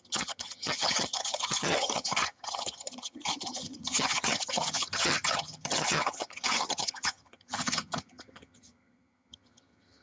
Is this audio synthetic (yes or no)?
yes